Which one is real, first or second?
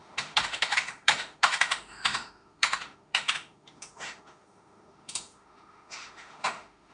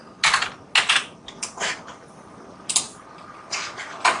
second